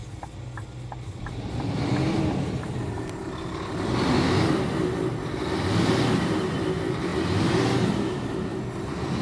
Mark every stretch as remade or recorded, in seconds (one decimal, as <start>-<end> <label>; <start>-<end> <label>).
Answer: 0.0-1.4 recorded; 1.4-9.2 remade